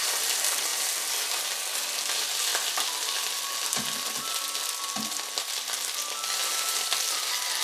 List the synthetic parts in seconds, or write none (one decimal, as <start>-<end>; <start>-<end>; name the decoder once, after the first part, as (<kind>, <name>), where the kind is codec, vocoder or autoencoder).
none